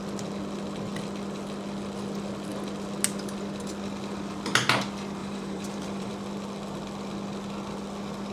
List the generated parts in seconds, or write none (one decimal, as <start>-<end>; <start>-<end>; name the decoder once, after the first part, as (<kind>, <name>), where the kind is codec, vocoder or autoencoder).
5.2-6.1 (vocoder, BigVGAN v2)